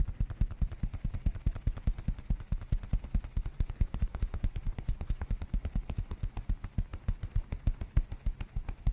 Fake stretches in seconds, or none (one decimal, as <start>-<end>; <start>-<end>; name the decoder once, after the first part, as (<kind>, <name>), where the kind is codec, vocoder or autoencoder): 3.5-5.3 (vocoder, Vocos)